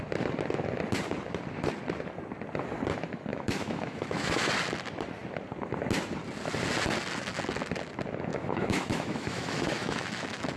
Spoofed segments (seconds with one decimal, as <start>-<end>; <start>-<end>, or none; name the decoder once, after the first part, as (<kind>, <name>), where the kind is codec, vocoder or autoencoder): 3.3-4.5 (autoencoder, DAC-VAE); 8.3-10.6